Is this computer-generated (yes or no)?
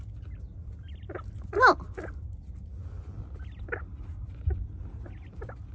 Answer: no